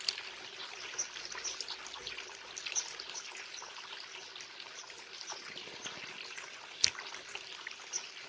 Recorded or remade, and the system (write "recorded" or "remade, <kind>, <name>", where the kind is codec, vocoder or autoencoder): recorded